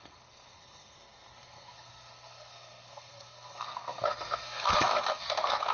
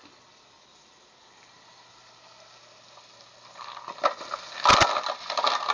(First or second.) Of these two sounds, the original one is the second